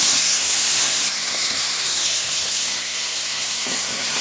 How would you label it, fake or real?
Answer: fake